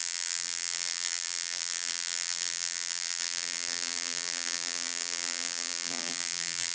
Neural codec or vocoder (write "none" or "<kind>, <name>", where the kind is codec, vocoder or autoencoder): vocoder, BigVGAN v2